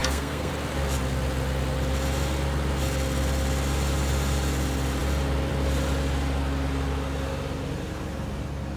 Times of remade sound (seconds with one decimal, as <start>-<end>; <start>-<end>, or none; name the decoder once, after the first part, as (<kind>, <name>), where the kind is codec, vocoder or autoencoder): 0.0-0.5 (codec, SNAC)